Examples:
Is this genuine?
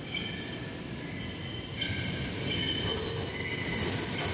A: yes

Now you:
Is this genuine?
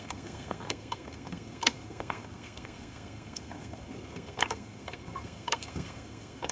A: no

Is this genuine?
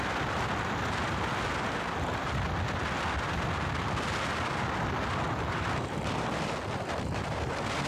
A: yes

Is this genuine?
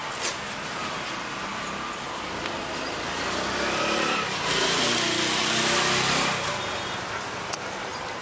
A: yes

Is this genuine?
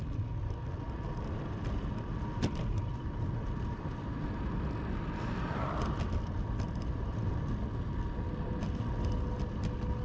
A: yes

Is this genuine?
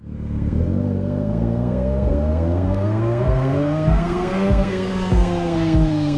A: no